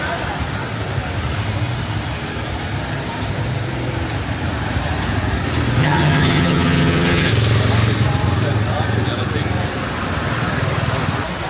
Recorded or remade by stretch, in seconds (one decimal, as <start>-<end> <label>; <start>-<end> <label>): 0.0-5.8 recorded; 5.8-7.3 remade; 7.3-11.5 recorded

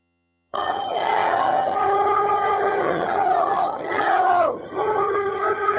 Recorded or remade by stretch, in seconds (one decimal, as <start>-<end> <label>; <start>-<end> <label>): 0.0-5.8 remade

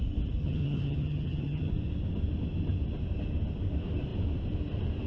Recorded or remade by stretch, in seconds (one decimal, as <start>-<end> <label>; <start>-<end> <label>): 0.0-0.4 recorded; 0.4-1.7 remade; 1.7-5.1 recorded

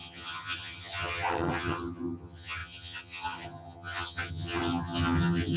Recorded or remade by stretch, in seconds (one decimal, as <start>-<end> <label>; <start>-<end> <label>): 0.0-5.6 remade